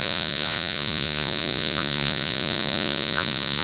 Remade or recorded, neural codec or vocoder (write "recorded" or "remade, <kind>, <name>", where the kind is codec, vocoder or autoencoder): remade, vocoder, Vocos